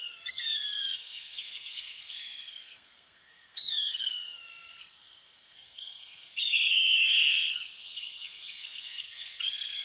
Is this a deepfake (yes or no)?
yes